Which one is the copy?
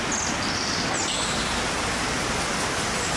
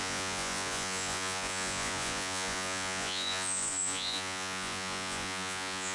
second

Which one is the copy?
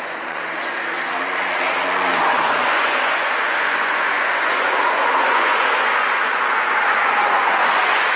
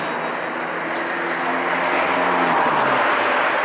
first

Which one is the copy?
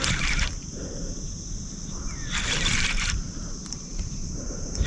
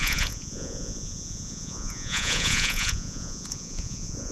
second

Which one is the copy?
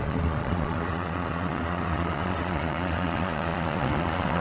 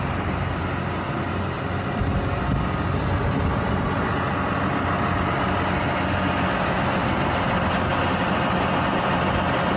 first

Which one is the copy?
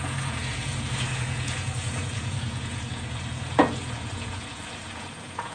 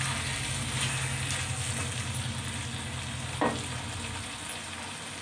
first